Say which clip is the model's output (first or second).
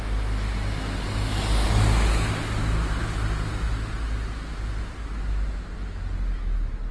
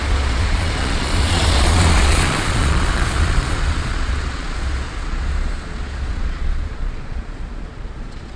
second